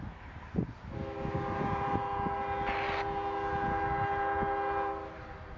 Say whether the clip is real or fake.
real